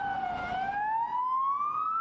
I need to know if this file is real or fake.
real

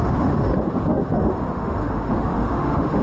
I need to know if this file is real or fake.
fake